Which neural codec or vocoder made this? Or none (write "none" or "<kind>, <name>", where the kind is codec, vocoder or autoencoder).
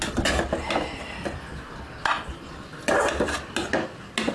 none